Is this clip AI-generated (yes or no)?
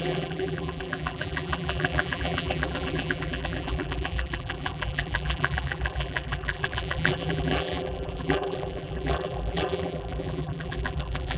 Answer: yes